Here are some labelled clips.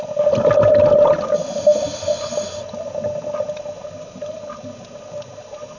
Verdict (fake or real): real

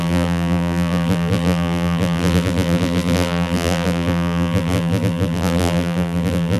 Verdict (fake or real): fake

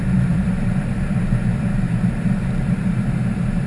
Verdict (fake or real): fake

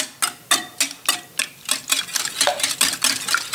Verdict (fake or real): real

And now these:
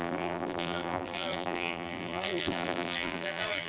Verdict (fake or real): fake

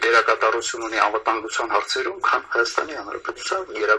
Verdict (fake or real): real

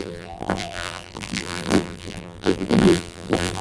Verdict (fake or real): fake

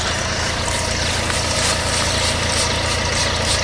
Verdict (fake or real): real